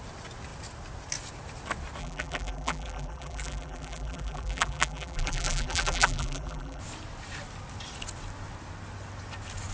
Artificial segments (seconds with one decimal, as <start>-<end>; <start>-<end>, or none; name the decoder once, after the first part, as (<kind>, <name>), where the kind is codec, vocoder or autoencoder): 2.0-6.8 (vocoder, BigVGAN v2)